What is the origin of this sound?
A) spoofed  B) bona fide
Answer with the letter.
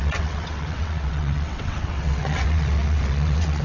A